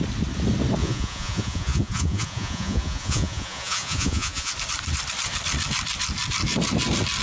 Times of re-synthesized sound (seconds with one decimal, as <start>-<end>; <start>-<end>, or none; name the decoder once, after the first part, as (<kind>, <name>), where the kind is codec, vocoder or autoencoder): 0.8-4.5 (vocoder, Vocos)